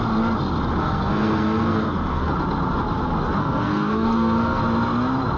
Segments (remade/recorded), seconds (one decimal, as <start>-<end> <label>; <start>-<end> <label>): 0.0-0.8 recorded; 0.8-2.3 remade; 2.3-3.4 recorded; 3.4-4.6 remade; 4.6-5.4 recorded